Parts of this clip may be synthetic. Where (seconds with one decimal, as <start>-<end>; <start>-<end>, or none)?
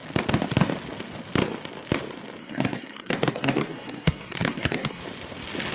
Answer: 2.4-5.0